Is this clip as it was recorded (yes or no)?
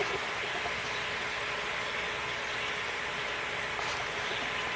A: yes